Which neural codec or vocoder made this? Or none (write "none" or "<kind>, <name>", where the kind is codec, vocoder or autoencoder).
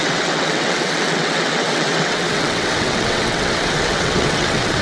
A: vocoder, WaveNeXt